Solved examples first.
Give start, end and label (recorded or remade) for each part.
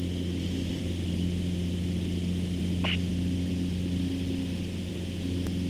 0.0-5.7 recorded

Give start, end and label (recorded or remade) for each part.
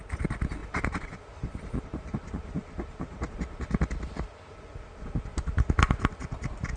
0.0-0.6 recorded; 0.6-3.3 remade; 3.3-6.8 recorded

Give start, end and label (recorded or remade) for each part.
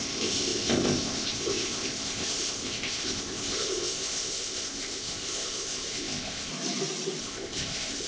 0.0-6.5 remade; 6.5-7.2 recorded; 7.2-8.1 remade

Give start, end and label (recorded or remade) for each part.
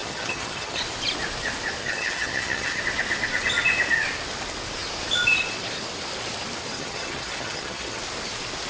0.0-0.8 remade; 0.8-1.8 recorded; 1.8-2.8 remade; 2.8-6.7 recorded; 6.7-8.0 remade; 8.0-8.7 recorded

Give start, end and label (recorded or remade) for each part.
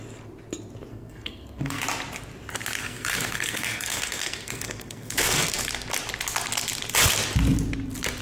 0.0-0.9 recorded; 0.9-1.8 remade; 1.8-2.8 recorded; 2.8-5.6 remade; 5.6-8.2 recorded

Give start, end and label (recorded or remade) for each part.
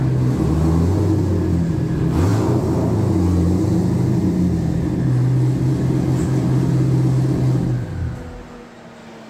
0.0-9.3 recorded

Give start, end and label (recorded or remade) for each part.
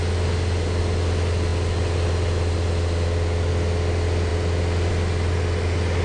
0.0-6.0 recorded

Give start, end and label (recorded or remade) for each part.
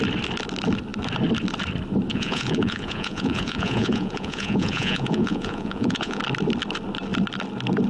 0.0-2.1 recorded; 2.1-6.2 remade; 6.2-7.9 recorded